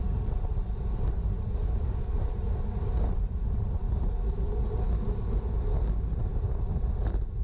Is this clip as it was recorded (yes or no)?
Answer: yes